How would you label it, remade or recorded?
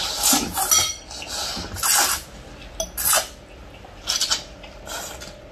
recorded